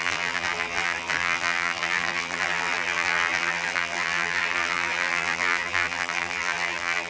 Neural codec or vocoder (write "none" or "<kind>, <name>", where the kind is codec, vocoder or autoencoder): vocoder, BigVGAN v2